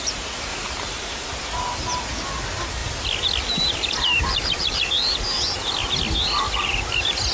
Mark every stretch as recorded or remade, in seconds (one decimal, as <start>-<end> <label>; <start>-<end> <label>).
0.0-0.5 recorded; 0.5-2.0 remade; 2.0-2.8 recorded; 2.8-5.2 remade; 5.2-7.3 recorded